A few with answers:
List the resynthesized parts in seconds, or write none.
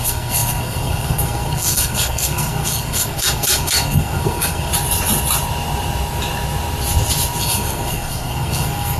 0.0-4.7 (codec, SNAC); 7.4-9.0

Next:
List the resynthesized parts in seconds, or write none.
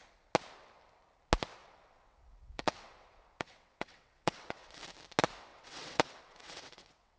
1.6-4.8 (vocoder, WaveNeXt); 5.5-7.2